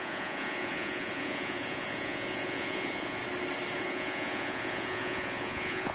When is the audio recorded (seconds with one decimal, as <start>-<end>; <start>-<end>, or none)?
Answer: 3.2-3.8